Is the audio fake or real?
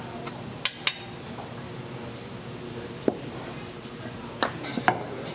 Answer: real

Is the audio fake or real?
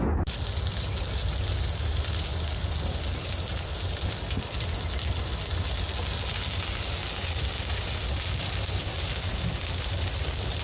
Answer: real